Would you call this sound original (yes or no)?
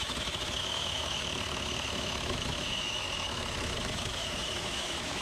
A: no